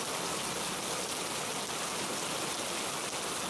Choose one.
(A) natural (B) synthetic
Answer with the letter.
A